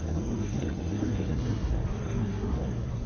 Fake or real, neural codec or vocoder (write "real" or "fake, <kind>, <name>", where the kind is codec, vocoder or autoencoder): fake, codec, SNAC